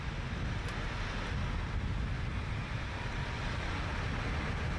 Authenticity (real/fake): real